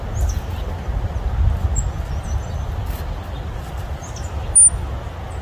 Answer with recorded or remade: recorded